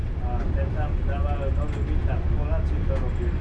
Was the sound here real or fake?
real